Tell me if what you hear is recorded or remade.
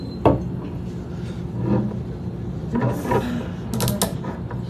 recorded